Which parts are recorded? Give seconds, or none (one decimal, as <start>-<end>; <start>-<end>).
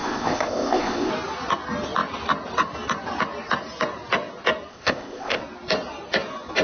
1.1-4.7; 5.4-6.6